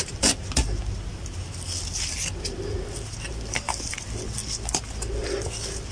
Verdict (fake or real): real